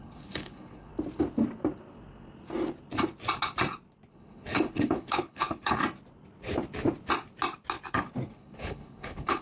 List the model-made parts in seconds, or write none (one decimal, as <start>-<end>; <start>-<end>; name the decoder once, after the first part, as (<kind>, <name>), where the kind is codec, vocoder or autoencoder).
0.0-0.9 (codec, HILCodec); 4.1-5.8; 8.3-9.4